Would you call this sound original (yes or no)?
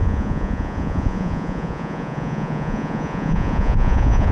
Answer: no